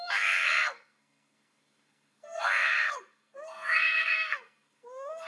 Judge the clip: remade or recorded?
remade